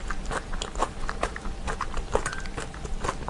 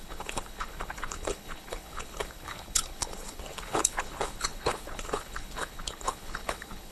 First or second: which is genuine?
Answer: first